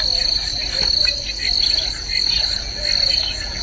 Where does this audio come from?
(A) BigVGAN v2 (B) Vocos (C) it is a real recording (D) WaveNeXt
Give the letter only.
C